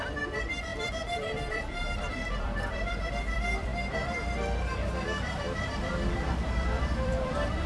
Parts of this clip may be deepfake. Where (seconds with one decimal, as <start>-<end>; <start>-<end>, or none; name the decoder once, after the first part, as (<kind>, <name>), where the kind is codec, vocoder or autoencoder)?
0.0-7.7 (vocoder, BigVGAN v2)